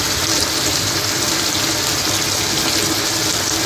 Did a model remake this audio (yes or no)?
no